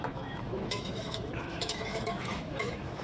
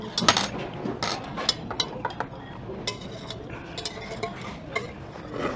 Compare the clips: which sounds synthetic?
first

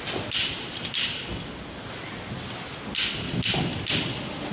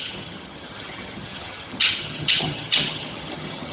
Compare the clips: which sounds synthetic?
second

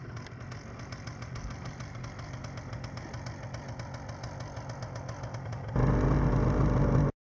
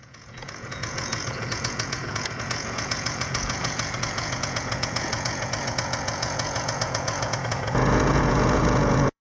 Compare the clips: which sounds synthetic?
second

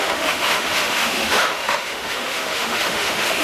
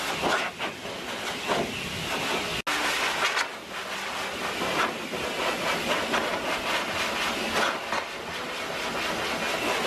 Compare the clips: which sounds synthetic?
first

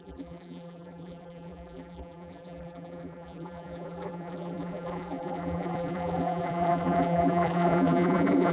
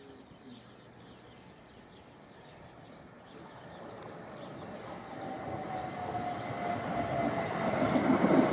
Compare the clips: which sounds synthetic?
first